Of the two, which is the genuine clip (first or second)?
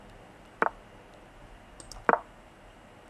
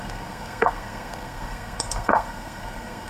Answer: first